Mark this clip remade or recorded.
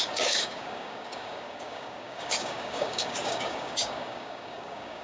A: remade